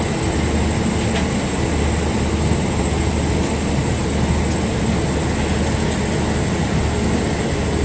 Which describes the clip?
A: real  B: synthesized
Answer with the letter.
A